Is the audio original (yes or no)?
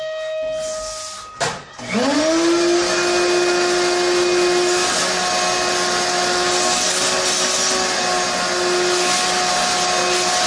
yes